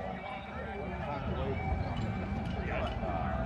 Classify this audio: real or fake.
real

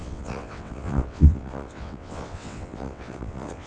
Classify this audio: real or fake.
fake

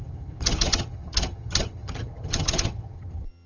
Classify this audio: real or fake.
fake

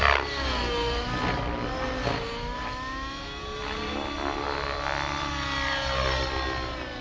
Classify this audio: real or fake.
real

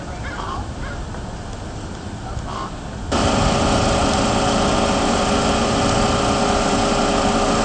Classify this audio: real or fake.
real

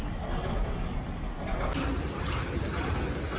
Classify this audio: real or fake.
real